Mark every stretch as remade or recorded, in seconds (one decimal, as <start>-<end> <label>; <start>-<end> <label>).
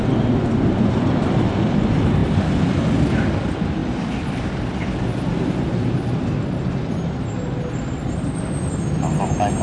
0.0-9.6 recorded